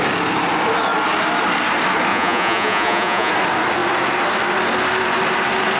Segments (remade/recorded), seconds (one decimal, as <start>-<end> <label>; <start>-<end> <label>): 0.0-2.1 recorded; 2.1-3.3 remade; 3.3-5.8 recorded